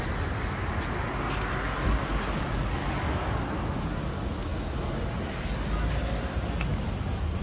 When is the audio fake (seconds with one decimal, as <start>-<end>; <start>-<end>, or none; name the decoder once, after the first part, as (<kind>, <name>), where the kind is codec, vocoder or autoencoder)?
none